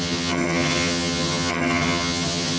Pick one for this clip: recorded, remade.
remade